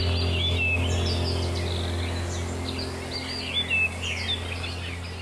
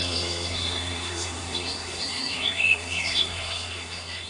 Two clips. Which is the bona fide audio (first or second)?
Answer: first